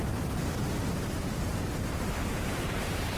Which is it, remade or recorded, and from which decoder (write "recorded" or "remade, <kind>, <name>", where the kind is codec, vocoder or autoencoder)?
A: remade, vocoder, BigVGAN v2